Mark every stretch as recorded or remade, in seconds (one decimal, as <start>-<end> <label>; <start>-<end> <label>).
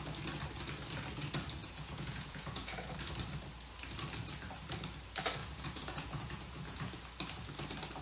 0.0-1.6 recorded; 1.6-2.9 remade; 2.9-5.4 recorded; 5.4-7.0 remade; 7.0-8.0 recorded